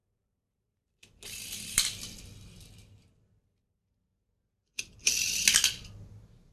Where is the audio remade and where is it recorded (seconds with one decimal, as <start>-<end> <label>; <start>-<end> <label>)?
0.0-3.8 remade; 3.8-6.1 recorded; 6.1-6.5 remade